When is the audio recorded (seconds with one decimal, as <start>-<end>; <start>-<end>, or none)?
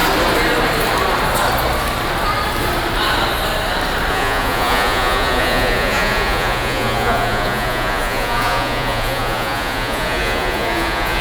0.0-4.1